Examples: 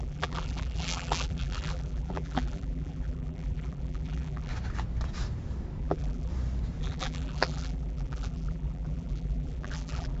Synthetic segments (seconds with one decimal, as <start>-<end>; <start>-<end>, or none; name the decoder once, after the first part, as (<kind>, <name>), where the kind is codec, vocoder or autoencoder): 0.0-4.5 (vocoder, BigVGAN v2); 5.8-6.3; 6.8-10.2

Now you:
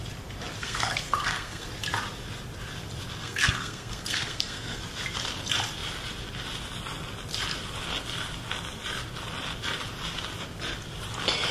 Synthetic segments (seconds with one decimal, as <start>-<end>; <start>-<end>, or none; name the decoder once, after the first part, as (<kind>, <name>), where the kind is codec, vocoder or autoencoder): 0.6-1.7 (codec, SNAC); 3.2-4.8

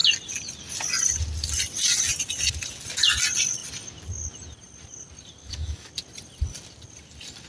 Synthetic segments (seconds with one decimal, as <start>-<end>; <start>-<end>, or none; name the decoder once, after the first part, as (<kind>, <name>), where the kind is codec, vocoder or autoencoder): 5.4-5.9 (codec, DAC)

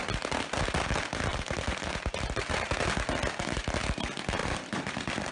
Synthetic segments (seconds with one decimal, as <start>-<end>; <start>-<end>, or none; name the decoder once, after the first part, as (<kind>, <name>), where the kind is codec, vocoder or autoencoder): 1.3-2.5 (vocoder, BigVGAN v2); 4.4-5.3

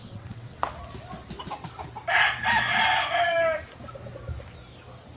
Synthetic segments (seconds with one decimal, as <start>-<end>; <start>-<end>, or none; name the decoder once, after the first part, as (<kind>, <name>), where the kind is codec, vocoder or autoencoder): 0.0-0.6 (vocoder, WaveNeXt)